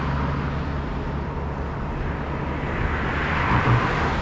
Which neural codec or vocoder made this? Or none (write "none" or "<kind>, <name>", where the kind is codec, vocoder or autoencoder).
none